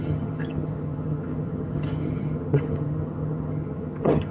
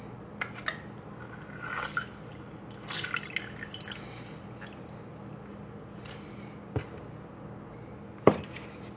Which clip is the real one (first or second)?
second